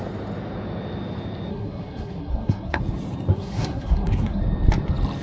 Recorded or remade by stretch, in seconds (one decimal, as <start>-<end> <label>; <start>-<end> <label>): 0.0-1.5 recorded; 1.5-2.8 remade; 2.8-3.3 recorded; 3.3-4.4 remade; 4.4-5.2 recorded